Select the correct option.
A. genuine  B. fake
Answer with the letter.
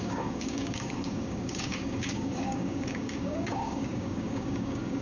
B